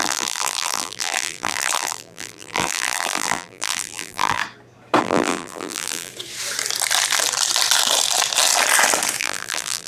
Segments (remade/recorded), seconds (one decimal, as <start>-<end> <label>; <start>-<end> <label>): 0.0-4.4 remade; 4.4-5.0 recorded; 5.0-6.1 remade; 6.1-9.2 recorded; 9.2-9.9 remade